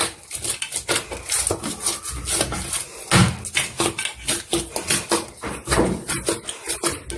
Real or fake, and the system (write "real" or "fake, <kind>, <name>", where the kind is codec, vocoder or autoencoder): real